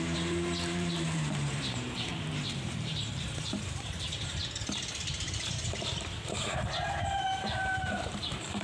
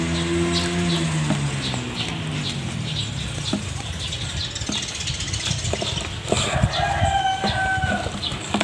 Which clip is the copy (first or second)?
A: first